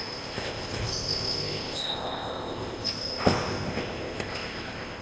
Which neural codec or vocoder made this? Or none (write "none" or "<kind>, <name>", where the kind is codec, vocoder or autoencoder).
codec, ZipCodec